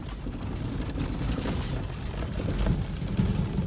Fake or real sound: real